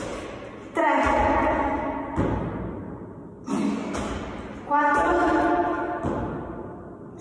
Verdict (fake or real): real